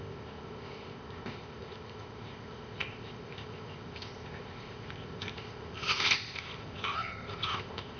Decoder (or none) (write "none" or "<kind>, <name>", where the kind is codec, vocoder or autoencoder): codec, ZipCodec